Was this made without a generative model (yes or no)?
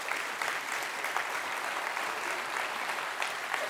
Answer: no